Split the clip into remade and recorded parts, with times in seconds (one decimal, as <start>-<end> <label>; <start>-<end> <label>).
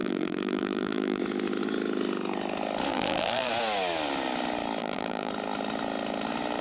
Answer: 0.0-1.2 remade; 1.2-2.9 recorded; 2.9-3.5 remade; 3.5-4.8 recorded; 4.8-5.3 remade; 5.3-6.6 recorded